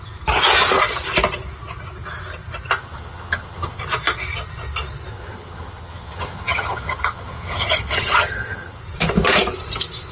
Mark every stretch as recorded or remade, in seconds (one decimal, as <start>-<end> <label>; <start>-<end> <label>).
0.0-2.8 recorded; 2.8-3.8 remade; 3.8-5.1 recorded; 5.1-8.8 remade; 8.8-10.1 recorded